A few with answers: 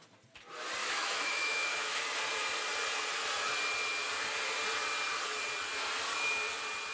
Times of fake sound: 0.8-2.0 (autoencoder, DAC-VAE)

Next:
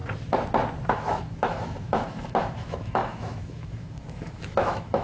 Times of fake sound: 0.9-5.0 (autoencoder, DAC-VAE)